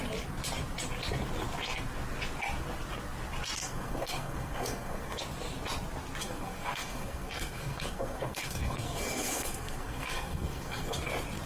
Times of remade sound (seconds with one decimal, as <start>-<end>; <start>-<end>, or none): 3.6-5.2; 6.2-11.1